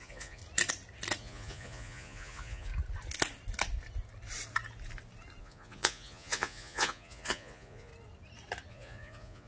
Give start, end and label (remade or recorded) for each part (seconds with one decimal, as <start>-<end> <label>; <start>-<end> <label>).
0.0-0.4 remade; 0.4-1.2 recorded; 1.2-2.7 remade; 2.7-5.4 recorded; 5.4-7.9 remade; 7.9-8.7 recorded; 8.7-9.5 remade